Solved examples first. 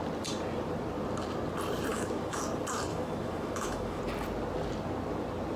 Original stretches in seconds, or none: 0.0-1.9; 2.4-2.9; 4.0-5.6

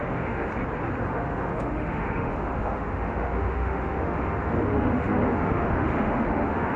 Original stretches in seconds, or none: 0.5-1.1

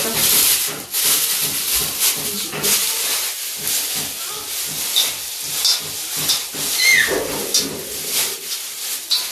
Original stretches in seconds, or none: 0.0-9.3

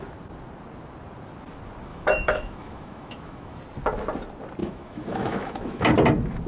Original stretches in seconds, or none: 0.0-1.9; 3.6-4.6; 5.9-6.5

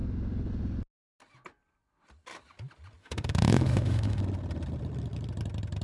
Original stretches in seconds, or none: 0.0-3.0; 4.2-5.8